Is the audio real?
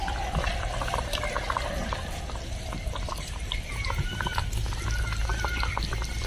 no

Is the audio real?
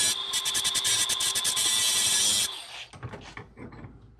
yes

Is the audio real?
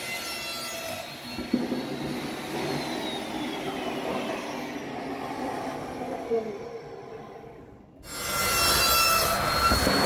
yes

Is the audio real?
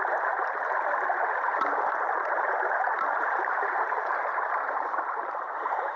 no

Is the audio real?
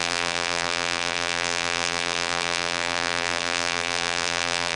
no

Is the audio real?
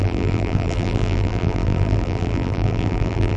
no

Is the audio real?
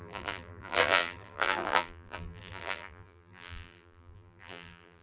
no